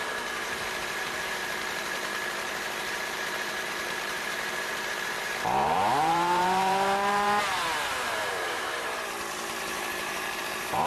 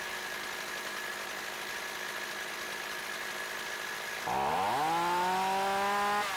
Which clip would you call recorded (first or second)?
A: second